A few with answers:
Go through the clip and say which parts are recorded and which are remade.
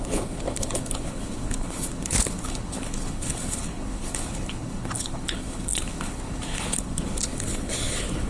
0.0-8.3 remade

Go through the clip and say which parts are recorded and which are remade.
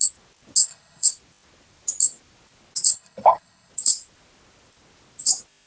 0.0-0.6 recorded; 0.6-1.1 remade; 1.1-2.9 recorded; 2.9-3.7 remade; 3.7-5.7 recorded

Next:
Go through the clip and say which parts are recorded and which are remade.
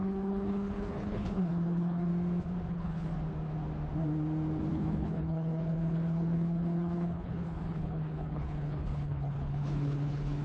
0.0-2.1 remade; 2.1-2.7 recorded; 2.7-3.1 remade; 3.1-4.7 recorded; 4.7-10.4 remade